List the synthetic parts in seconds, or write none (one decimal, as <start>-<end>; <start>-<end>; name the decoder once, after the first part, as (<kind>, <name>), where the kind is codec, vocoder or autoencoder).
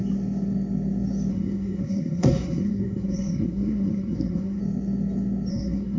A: 1.3-4.6 (codec, SNAC); 5.5-6.0